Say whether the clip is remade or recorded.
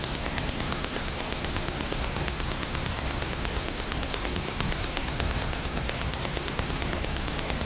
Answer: remade